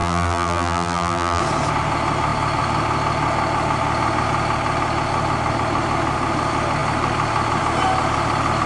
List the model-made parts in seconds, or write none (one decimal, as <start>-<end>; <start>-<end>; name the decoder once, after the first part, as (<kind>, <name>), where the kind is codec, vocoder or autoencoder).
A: 0.0-1.4 (vocoder, BigVGAN v2)